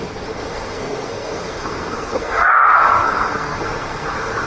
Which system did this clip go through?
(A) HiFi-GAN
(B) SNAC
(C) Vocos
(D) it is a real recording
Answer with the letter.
B